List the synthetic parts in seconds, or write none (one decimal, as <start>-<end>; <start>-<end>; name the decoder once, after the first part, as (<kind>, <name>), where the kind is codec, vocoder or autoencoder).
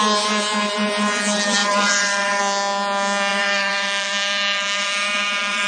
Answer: 1.6-2.4 (vocoder, BigVGAN v2); 3.3-5.7